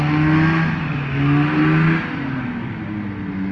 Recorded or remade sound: recorded